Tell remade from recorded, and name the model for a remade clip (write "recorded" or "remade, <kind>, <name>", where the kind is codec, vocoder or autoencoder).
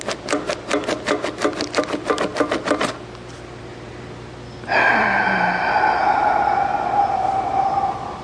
recorded